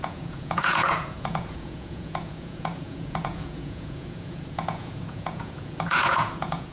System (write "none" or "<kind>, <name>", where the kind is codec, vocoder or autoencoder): vocoder, Vocos